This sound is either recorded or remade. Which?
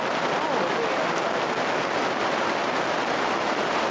recorded